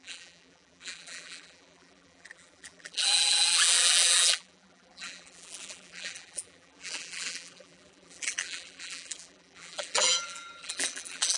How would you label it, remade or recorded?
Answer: remade